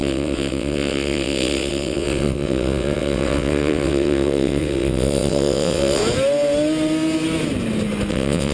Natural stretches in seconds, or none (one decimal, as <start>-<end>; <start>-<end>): 6.0-8.1